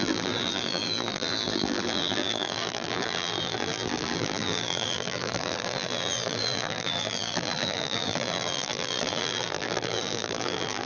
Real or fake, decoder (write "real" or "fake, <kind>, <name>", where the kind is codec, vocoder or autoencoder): fake, vocoder, BigVGAN v2